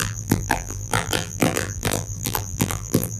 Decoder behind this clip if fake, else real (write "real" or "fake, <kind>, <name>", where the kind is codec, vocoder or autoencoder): fake, vocoder, BigVGAN v2